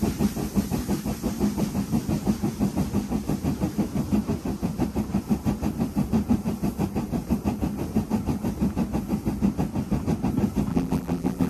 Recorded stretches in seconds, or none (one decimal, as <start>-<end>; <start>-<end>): 0.0-10.7

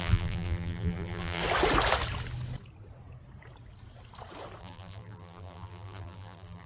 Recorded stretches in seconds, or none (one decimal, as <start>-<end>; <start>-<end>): 1.4-4.6

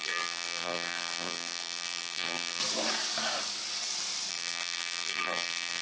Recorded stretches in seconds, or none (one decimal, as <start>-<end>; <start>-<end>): 2.6-4.3

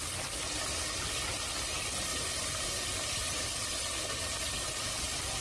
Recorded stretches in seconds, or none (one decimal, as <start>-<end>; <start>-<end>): 0.0-2.1; 3.5-5.4

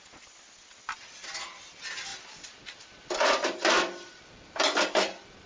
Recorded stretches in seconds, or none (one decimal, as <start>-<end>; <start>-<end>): 0.0-2.1; 4.1-5.5

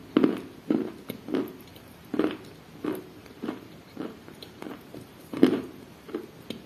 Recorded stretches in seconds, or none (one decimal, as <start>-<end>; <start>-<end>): 0.0-1.7; 2.2-3.2; 6.2-6.7